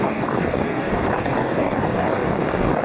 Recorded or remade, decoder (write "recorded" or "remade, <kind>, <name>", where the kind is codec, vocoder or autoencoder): remade, codec, DAC